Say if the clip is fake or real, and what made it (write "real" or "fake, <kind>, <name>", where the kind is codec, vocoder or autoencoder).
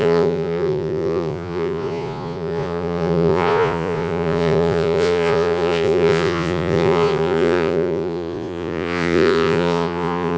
fake, vocoder, Vocos